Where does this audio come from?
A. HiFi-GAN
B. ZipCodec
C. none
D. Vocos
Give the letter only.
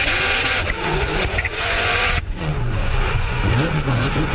D